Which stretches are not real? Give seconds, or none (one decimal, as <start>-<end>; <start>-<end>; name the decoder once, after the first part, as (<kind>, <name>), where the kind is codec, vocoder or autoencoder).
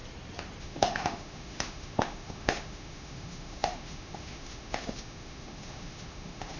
0.6-6.6 (autoencoder, DAC-VAE)